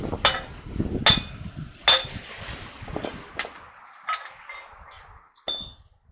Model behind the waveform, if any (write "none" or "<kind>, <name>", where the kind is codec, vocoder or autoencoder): none